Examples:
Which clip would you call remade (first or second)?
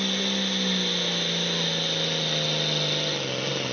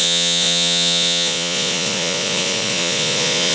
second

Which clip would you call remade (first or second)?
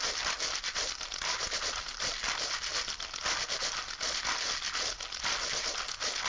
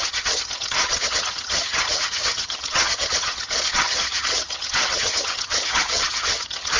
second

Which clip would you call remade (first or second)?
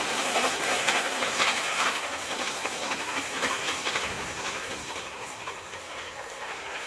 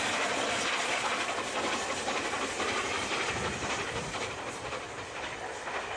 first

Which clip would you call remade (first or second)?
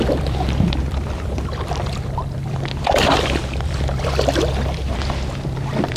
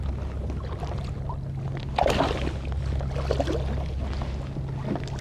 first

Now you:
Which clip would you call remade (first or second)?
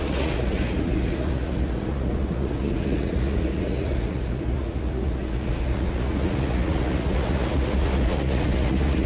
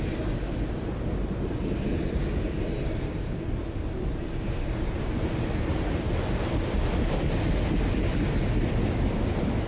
first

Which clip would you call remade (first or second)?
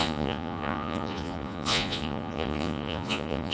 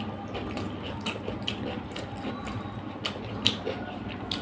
first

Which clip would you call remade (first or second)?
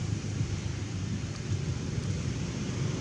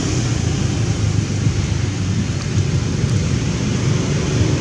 first